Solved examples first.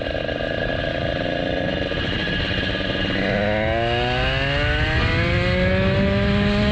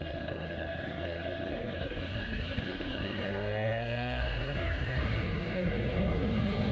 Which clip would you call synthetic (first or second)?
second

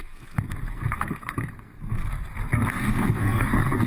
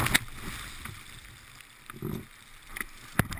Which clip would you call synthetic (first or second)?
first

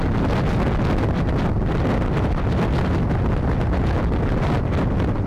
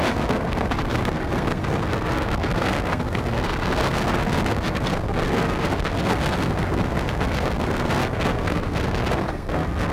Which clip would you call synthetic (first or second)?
second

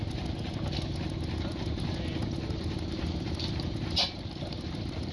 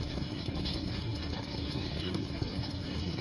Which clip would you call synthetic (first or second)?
second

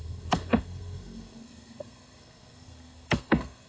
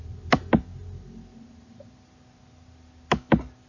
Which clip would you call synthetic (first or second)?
first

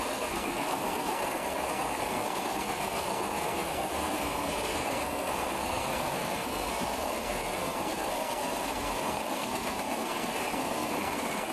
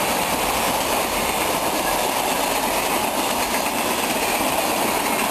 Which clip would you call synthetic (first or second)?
first